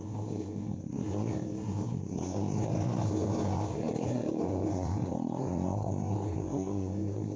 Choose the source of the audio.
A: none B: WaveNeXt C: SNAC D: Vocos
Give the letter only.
C